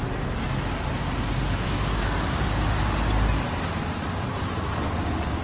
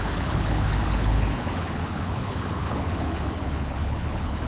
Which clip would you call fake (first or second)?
second